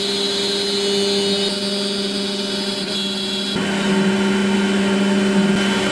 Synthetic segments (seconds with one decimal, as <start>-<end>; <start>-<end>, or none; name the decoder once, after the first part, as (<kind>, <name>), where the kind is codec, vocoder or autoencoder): none